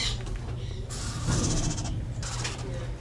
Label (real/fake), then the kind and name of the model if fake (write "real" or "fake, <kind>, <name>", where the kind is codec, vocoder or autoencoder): real